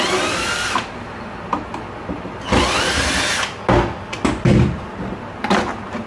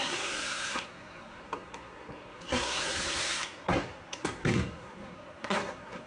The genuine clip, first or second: first